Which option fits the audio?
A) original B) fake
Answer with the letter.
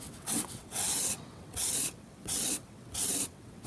B